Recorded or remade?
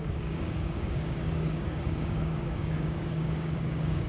remade